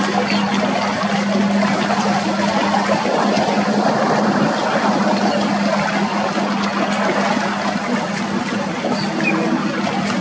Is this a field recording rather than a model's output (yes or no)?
yes